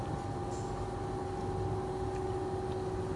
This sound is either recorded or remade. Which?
recorded